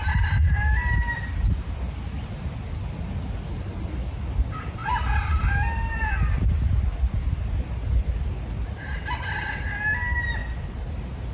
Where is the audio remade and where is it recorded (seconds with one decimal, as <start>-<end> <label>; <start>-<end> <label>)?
0.0-11.3 recorded